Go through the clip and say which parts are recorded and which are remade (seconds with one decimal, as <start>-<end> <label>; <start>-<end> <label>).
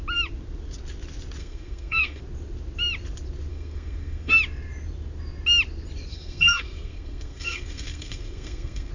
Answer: 0.0-1.4 recorded; 1.4-2.2 remade; 2.2-3.5 recorded; 3.5-4.4 remade; 4.4-6.1 recorded; 6.1-8.9 remade